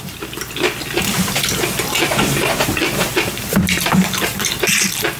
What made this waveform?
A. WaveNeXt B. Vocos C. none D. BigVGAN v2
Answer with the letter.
D